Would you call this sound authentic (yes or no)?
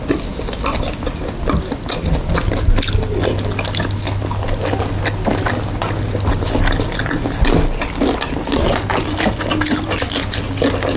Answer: yes